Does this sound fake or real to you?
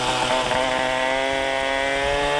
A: real